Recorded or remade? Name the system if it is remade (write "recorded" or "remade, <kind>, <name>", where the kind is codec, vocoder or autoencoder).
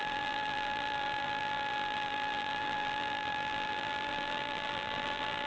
remade, vocoder, BigVGAN v2